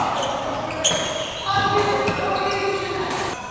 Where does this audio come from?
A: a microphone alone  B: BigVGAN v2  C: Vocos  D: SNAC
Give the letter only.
A